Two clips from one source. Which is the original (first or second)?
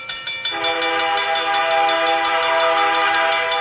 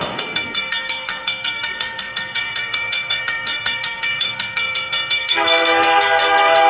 first